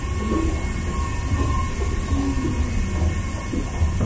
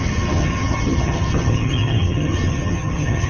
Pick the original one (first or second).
first